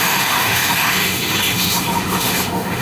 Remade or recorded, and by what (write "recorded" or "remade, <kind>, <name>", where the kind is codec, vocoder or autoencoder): remade, autoencoder, DAC-VAE